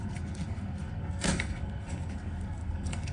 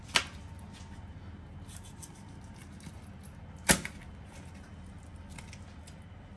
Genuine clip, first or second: second